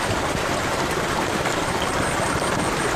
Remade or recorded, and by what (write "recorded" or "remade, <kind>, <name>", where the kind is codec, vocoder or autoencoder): remade, vocoder, BigVGAN v2